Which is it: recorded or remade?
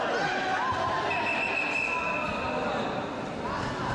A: recorded